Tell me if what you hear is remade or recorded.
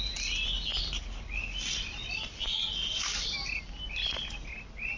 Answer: recorded